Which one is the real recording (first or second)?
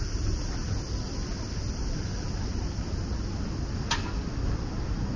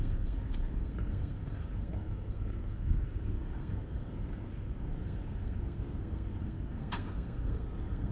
first